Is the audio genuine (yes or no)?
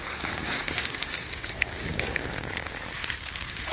no